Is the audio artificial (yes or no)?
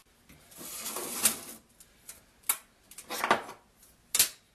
no